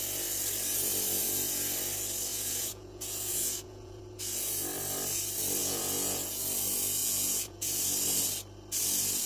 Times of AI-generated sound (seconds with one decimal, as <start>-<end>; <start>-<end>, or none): 2.3-4.0; 5.6-6.4; 7.0-7.8

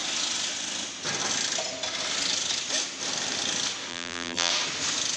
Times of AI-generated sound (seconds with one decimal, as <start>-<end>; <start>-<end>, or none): 3.9-4.5